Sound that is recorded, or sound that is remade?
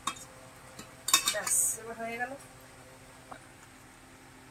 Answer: recorded